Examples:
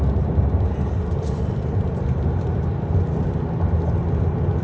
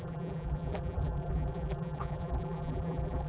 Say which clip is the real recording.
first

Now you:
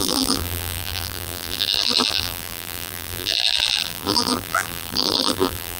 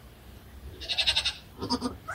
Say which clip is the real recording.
second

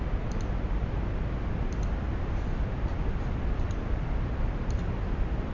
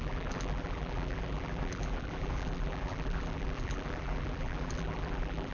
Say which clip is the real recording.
first